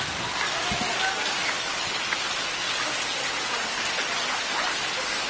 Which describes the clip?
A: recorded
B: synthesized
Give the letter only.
A